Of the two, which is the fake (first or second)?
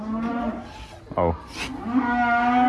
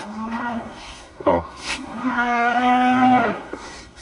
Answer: second